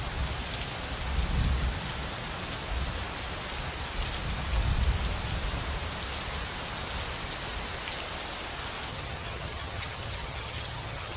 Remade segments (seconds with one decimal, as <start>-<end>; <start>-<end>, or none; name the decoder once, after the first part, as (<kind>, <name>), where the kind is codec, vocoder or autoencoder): 8.9-11.2 (vocoder, HiFi-GAN)